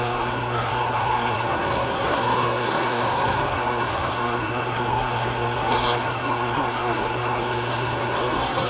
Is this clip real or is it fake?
fake